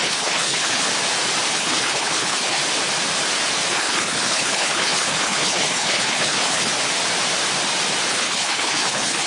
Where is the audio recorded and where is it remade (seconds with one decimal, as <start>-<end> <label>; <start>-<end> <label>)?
0.0-0.9 remade; 0.9-1.5 recorded; 1.5-2.6 remade; 2.6-3.7 recorded; 3.7-6.7 remade; 6.7-8.1 recorded; 8.1-9.3 remade

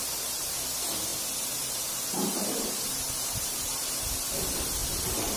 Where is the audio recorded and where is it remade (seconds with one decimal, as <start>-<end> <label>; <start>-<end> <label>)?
0.0-0.5 remade; 0.5-1.1 recorded; 1.1-4.3 remade; 4.3-5.4 recorded